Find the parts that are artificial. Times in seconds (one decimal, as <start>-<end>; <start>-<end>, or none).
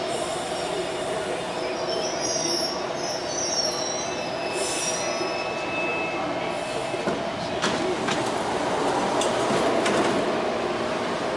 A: none